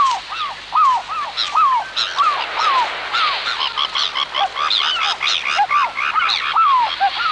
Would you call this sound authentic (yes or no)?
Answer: yes